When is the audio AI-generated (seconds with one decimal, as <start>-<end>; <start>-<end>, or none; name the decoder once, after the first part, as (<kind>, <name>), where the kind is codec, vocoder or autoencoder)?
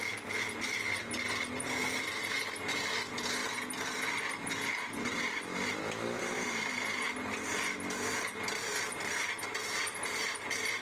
none